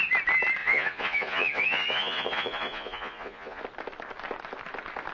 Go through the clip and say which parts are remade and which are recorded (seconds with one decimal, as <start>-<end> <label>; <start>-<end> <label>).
0.0-0.6 recorded; 0.6-3.6 remade; 3.6-5.1 recorded